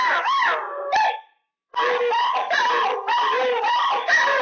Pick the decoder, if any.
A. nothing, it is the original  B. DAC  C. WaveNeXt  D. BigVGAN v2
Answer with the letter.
A